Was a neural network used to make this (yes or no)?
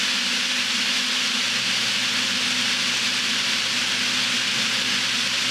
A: no